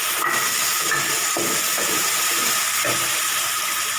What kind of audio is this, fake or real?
real